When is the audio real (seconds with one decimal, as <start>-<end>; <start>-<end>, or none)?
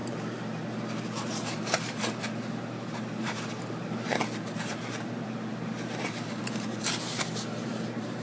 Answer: 0.0-1.2